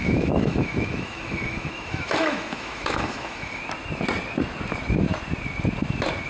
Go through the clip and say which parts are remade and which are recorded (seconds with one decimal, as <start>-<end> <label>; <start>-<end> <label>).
0.0-3.6 remade; 3.6-6.3 recorded